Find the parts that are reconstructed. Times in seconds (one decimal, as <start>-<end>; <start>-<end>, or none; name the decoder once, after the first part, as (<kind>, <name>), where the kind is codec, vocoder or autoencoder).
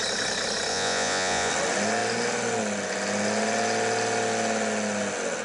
0.7-1.5 (vocoder, Vocos)